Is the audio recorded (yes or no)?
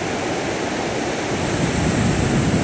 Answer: yes